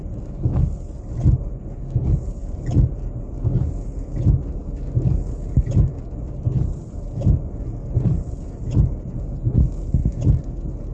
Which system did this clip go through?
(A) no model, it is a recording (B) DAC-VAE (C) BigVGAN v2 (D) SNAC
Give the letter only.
A